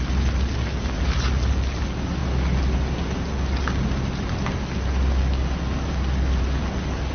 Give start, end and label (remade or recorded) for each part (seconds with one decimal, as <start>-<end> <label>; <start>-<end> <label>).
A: 0.0-7.1 recorded